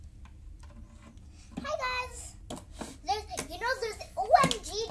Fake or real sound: real